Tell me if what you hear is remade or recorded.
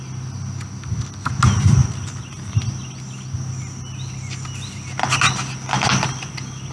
recorded